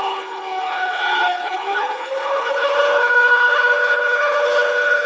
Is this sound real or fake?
fake